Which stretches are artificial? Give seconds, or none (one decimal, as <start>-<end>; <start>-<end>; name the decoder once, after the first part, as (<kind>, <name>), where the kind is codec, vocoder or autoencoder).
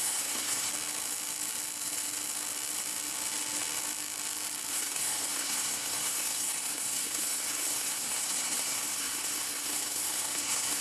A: 0.0-0.7 (codec, SNAC); 4.7-10.8